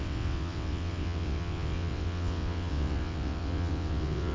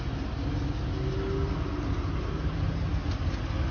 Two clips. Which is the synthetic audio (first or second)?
first